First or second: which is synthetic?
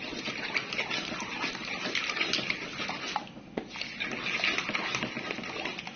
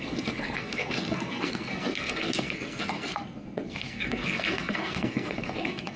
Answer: second